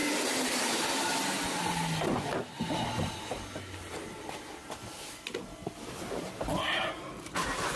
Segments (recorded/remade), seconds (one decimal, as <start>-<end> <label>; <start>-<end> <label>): 0.0-7.8 recorded